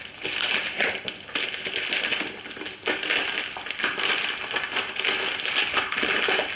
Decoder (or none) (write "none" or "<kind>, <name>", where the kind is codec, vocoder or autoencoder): none